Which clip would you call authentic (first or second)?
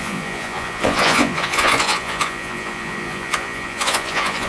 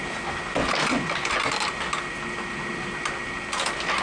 second